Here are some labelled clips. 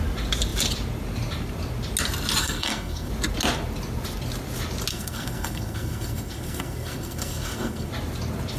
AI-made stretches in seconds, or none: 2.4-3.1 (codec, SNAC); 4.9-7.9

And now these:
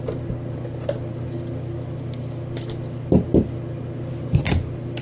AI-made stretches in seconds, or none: none

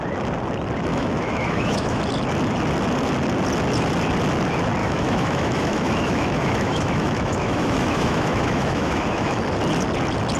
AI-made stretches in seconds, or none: 0.9-2.0 (autoencoder, DAC-VAE); 4.8-9.4

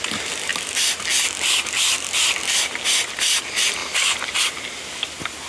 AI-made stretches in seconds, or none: 3.8-4.4 (vocoder, BigVGAN v2)

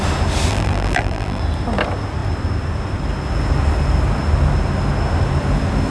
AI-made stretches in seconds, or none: 0.5-1.4 (vocoder, BigVGAN v2)

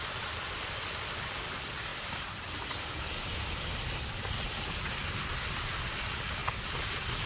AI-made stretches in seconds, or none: none

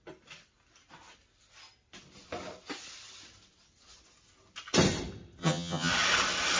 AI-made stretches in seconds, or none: 5.4-5.9 (vocoder, HiFi-GAN)